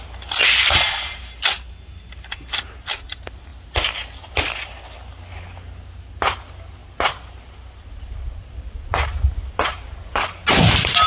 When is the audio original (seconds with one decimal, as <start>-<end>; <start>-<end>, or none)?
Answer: 0.0-11.1